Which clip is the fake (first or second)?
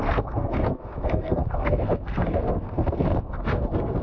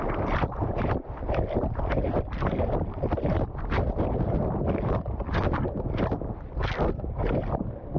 first